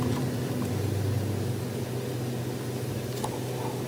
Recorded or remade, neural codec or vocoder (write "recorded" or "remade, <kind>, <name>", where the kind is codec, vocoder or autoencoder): recorded